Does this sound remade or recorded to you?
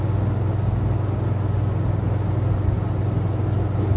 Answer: recorded